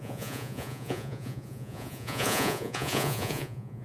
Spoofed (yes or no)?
yes